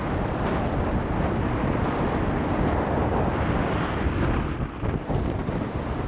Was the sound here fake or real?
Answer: real